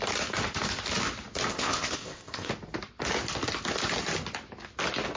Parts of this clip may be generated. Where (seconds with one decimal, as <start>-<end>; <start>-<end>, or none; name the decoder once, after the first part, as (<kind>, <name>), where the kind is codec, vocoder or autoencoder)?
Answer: 1.5-2.5 (codec, ZipCodec)